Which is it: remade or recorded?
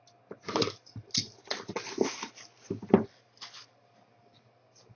recorded